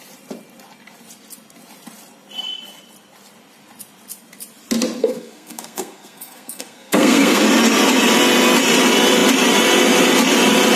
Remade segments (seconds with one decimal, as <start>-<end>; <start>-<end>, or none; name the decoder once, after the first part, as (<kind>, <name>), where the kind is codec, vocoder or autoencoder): 5.0-7.4 (codec, SNAC)